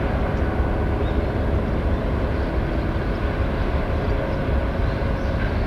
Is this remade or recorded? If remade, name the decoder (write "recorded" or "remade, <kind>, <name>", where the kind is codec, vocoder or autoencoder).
recorded